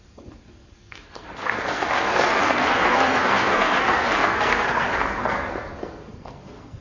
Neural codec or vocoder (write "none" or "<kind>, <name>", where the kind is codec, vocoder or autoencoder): codec, SNAC